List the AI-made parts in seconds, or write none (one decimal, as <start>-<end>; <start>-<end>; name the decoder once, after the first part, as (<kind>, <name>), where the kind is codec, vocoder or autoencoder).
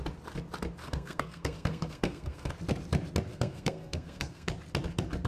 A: 0.8-2.5 (codec, SNAC); 3.3-4.5